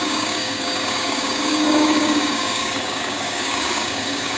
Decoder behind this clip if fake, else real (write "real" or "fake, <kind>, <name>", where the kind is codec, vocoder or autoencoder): fake, codec, DAC